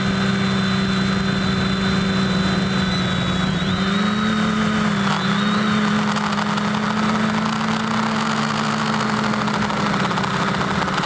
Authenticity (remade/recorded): recorded